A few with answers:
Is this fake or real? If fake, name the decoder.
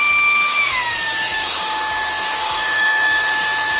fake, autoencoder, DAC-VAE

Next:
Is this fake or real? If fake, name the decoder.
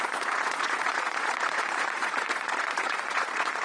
fake, vocoder, Vocos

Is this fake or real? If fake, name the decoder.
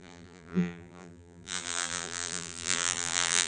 fake, vocoder, BigVGAN v2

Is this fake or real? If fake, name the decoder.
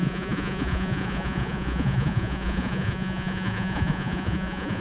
fake, vocoder, Vocos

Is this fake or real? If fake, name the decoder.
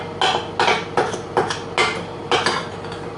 real